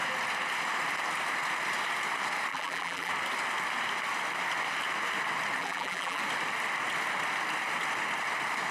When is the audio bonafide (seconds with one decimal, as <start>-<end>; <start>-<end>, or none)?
0.0-2.5; 3.1-5.6; 6.2-8.7